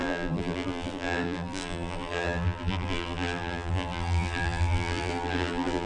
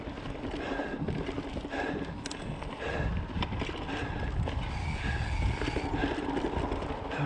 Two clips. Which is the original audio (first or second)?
second